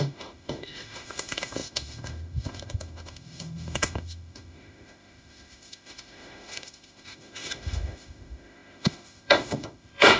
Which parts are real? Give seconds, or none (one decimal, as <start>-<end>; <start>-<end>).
none